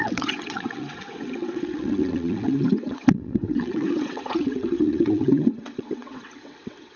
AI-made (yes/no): yes